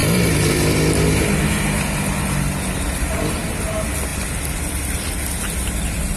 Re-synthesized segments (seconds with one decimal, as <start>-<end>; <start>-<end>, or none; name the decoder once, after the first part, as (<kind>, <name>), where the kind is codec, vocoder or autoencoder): none